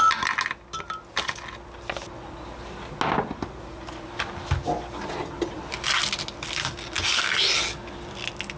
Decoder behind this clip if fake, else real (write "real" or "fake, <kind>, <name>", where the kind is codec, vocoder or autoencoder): real